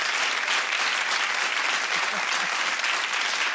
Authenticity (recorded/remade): recorded